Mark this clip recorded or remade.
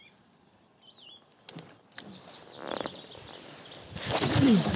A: remade